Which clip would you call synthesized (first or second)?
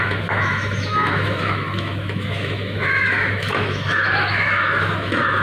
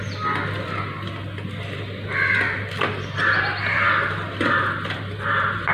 first